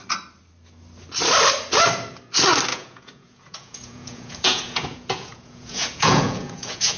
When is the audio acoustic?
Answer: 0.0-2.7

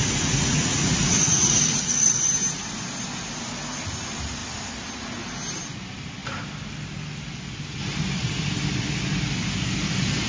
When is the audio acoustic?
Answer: 2.3-10.3

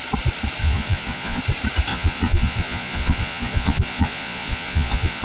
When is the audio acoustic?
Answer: 0.0-0.6; 1.4-1.9

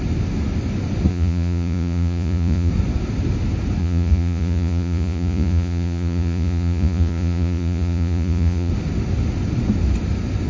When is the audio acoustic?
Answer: 0.0-1.1; 2.7-3.8; 8.7-10.5